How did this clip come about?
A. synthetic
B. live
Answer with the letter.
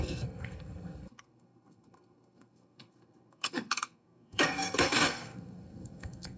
A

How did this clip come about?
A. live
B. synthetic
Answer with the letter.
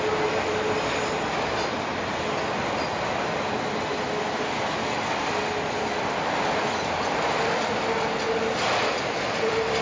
A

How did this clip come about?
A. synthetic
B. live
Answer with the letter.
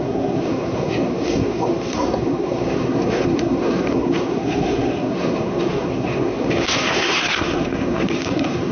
A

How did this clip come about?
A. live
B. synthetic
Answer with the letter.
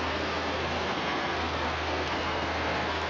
B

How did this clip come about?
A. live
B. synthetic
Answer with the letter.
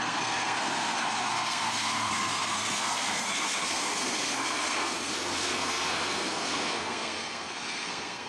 B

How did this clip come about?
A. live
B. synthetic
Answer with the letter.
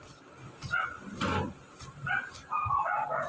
A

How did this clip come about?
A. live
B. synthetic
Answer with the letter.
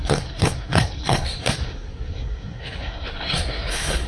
B